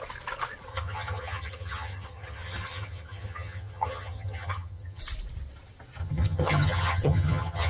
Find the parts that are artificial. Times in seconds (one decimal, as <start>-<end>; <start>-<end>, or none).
0.7-5.0; 6.0-7.7